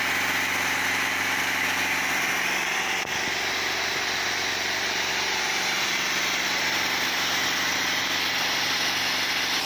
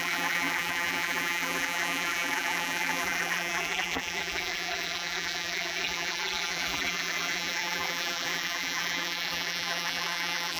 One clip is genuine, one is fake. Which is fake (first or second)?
second